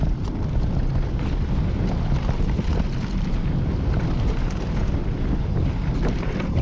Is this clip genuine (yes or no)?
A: yes